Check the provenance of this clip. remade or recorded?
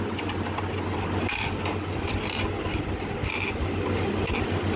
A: recorded